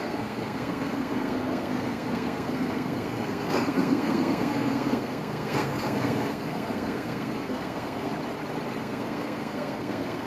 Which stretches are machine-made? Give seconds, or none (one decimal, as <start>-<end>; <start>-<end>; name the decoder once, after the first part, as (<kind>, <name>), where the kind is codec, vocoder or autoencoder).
0.0-8.1 (codec, SNAC); 8.8-10.3